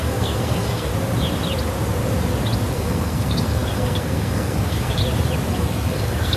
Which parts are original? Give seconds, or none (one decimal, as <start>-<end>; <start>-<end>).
0.9-2.7; 5.0-5.5

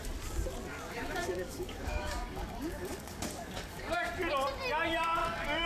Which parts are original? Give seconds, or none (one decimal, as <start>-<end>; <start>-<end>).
0.0-0.7; 4.1-5.2